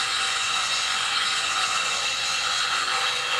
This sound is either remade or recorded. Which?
remade